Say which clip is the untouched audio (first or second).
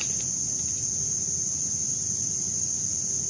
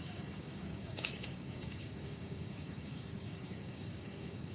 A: first